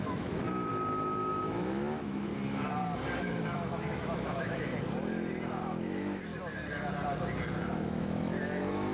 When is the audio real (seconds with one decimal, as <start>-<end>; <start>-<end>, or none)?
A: 0.7-1.4; 2.3-3.2; 4.7-5.6; 6.3-7.7